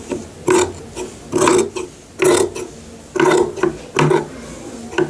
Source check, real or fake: real